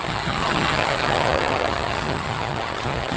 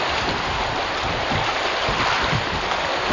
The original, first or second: second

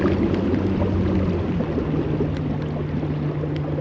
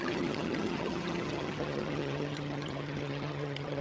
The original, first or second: first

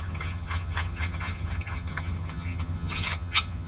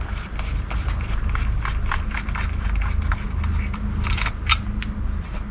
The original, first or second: second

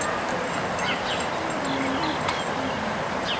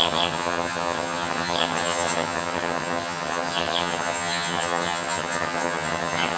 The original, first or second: first